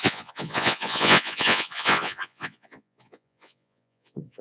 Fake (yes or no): yes